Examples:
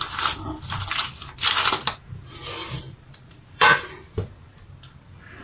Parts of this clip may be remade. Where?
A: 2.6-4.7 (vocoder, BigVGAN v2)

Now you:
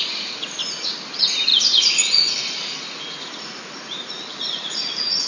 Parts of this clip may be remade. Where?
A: 0.0-0.6 (vocoder, Vocos); 1.1-5.3

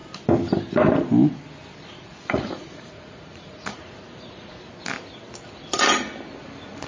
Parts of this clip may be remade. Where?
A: 1.8-4.7 (vocoder, Vocos)